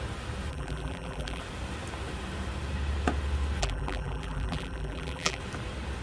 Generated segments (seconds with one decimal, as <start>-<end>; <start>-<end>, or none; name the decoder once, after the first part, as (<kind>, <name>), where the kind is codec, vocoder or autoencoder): 0.5-1.4 (vocoder, BigVGAN v2); 3.6-5.4